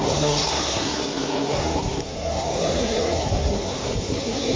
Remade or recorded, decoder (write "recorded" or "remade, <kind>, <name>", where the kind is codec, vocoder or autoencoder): remade, codec, SNAC